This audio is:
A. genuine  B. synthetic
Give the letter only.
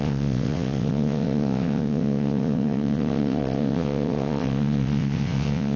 B